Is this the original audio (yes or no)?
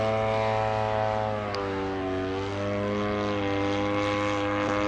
yes